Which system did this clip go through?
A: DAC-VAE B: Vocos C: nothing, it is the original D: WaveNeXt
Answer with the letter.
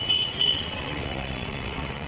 D